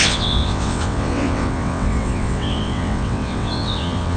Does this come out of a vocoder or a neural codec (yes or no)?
yes